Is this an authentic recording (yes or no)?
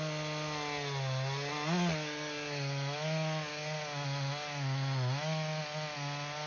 yes